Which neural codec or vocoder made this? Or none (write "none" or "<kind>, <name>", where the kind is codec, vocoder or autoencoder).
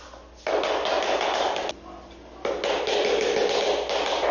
none